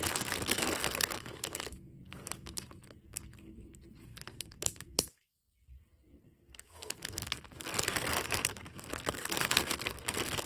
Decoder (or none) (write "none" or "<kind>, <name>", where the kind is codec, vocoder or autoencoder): codec, SNAC